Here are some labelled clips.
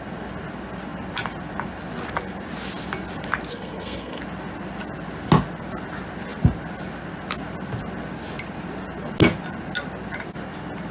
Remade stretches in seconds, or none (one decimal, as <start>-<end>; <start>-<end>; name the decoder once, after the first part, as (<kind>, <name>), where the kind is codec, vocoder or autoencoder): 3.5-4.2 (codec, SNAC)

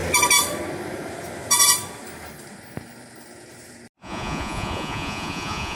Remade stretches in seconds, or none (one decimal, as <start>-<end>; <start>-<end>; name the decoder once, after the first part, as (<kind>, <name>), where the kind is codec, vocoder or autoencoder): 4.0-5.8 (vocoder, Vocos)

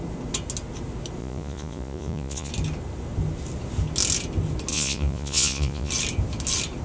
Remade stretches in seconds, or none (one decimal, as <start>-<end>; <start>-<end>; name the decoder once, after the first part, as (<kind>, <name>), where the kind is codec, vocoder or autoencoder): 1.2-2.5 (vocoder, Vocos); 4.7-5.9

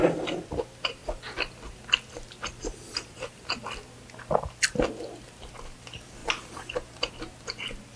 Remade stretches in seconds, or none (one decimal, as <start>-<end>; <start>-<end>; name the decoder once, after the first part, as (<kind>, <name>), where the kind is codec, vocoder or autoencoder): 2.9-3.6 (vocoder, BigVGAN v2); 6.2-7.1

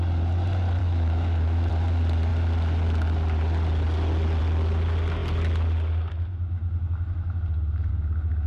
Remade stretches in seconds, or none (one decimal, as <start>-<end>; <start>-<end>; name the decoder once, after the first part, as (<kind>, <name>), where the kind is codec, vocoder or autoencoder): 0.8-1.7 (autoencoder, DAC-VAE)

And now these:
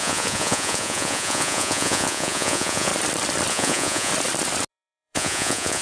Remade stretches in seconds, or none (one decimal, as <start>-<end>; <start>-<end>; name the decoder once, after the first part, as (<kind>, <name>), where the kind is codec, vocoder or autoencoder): 0.0-2.9 (vocoder, Vocos); 3.5-4.1; 4.7-5.8